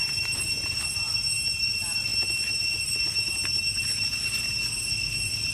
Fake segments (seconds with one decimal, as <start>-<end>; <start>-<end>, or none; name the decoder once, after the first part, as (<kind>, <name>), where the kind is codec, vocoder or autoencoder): none

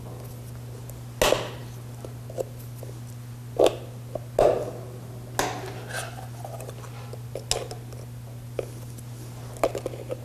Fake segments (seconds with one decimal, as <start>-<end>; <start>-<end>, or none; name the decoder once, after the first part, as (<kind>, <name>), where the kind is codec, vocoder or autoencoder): none

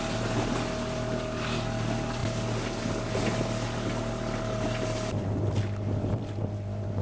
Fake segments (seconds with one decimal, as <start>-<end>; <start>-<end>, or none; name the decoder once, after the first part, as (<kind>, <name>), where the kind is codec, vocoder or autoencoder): none

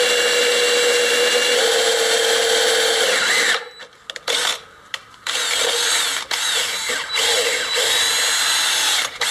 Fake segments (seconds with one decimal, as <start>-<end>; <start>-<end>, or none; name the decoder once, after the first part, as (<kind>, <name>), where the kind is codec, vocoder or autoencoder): none

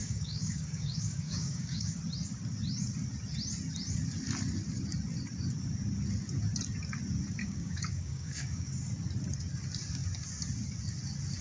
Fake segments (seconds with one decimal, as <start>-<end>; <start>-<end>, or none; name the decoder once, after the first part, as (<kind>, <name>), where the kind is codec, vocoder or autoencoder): 0.0-2.0 (codec, DAC); 7.4-8.7

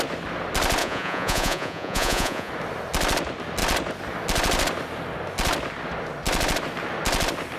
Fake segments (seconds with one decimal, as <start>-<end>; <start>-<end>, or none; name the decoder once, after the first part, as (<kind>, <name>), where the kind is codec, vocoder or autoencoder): 0.8-2.5 (vocoder, Vocos)